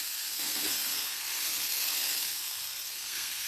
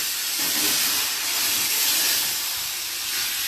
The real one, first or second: second